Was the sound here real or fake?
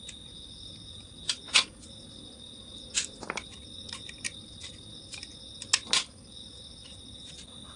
real